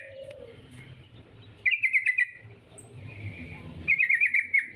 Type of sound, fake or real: fake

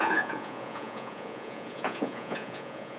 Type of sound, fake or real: fake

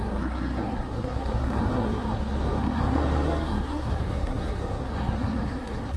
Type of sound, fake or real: fake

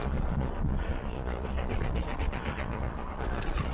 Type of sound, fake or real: fake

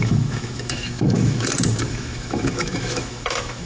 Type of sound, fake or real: fake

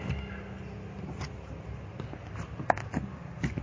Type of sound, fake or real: real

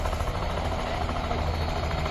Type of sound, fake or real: real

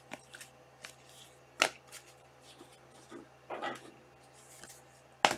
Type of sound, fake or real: real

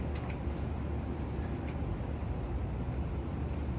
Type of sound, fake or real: real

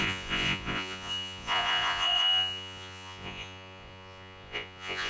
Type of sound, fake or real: fake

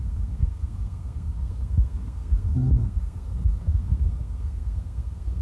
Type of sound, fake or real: fake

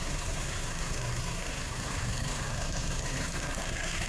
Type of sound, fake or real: fake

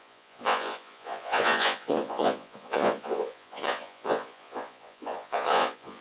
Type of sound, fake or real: fake